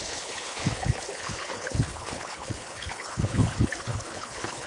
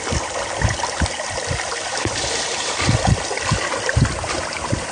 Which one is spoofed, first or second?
first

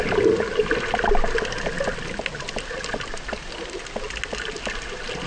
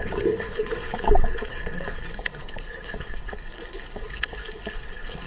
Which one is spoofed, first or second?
second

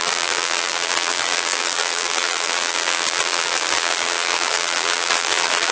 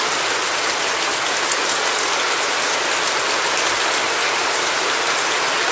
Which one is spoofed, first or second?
first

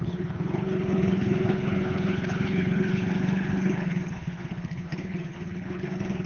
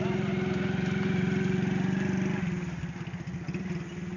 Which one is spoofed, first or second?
first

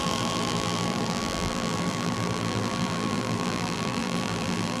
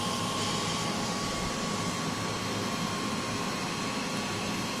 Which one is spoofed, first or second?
first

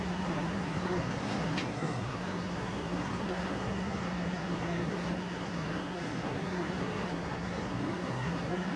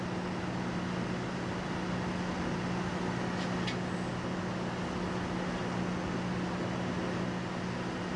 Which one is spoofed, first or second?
first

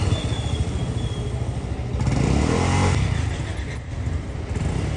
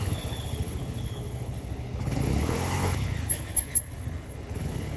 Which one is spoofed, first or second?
second